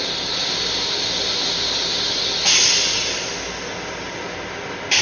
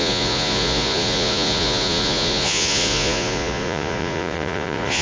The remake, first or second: second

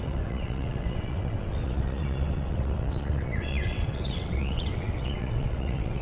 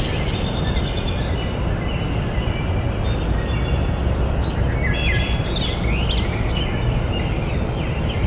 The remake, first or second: first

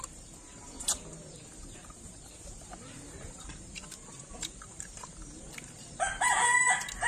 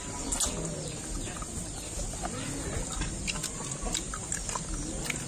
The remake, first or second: first